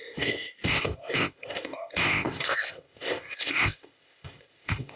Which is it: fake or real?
fake